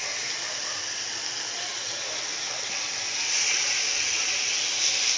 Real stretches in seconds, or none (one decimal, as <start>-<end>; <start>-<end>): 0.0-0.6